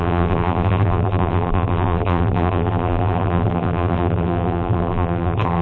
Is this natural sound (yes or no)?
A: no